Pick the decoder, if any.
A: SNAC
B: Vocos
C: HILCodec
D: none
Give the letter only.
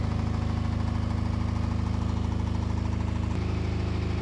D